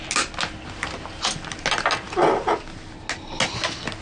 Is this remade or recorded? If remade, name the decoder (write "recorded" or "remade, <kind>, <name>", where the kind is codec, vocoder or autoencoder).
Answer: recorded